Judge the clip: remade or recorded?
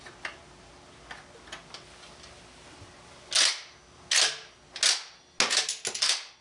recorded